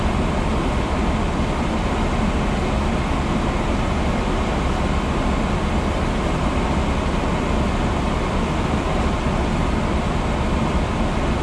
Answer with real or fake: real